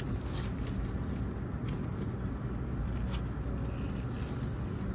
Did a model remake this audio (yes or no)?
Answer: no